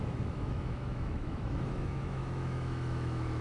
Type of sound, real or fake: fake